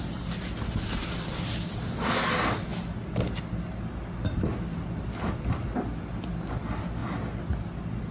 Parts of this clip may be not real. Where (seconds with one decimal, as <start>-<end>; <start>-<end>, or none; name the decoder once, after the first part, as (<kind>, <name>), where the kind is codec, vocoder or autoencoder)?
none